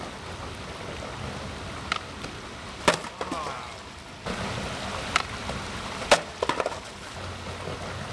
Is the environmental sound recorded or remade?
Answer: recorded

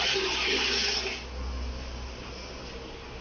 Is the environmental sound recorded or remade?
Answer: recorded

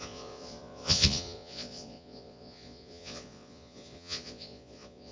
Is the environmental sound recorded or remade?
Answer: remade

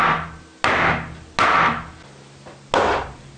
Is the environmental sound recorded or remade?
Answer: recorded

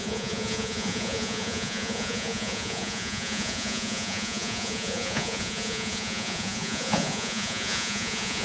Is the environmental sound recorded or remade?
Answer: remade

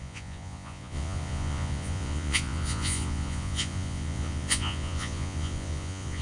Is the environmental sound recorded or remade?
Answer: remade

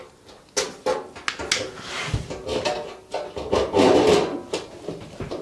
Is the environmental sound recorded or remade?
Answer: recorded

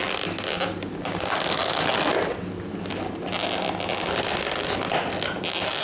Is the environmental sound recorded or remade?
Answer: recorded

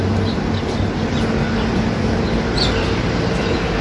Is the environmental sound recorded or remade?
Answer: recorded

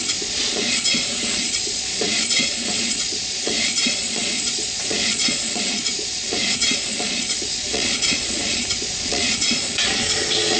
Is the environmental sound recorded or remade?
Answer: remade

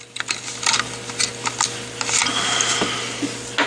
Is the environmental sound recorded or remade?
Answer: recorded